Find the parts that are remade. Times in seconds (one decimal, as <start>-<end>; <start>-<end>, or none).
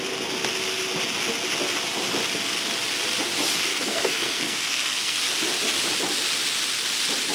3.7-5.2